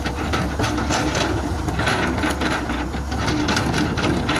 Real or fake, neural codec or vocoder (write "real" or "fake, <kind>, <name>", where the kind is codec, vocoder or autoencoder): real